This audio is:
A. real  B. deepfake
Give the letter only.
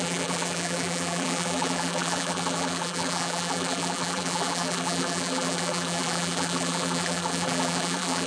B